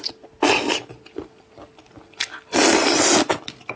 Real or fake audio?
real